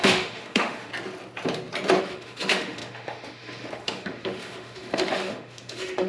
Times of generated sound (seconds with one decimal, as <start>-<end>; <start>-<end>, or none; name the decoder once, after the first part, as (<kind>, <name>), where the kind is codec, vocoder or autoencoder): 0.0-0.9 (autoencoder, DAC-VAE); 2.0-6.1